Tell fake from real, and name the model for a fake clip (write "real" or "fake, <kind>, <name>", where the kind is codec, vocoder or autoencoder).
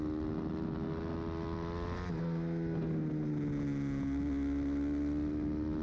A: real